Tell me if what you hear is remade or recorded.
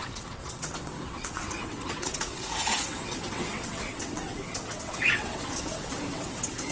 remade